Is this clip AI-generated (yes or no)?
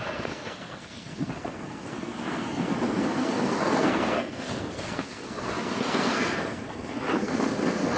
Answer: yes